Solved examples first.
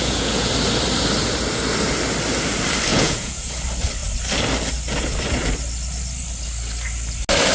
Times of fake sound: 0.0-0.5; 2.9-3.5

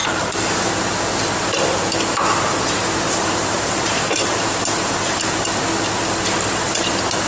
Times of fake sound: 0.0-0.7; 2.8-5.4

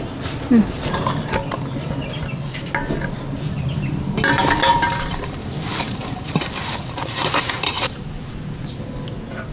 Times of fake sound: 4.7-8.3

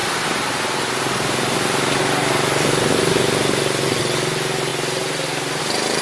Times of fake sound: none

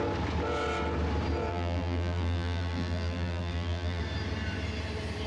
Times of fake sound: 1.5-4.0

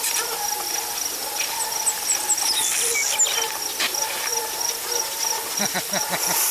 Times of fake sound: 0.0-2.6; 3.8-6.5